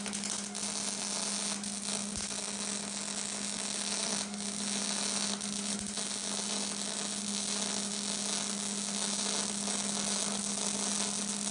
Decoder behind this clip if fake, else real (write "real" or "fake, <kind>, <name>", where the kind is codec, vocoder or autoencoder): real